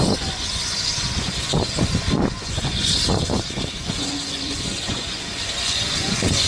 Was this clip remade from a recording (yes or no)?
yes